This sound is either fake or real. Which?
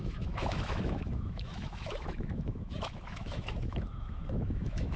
fake